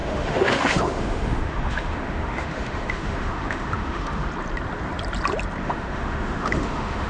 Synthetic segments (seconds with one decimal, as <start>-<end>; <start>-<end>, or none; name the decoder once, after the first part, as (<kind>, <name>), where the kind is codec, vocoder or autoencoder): 0.0-4.3 (autoencoder, DAC-VAE); 5.6-7.1